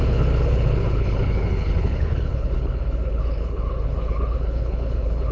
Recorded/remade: remade